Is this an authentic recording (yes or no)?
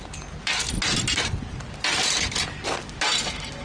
yes